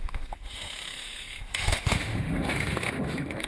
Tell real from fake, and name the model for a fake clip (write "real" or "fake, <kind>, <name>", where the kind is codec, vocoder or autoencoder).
fake, autoencoder, DAC-VAE